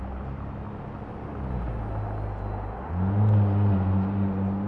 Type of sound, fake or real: real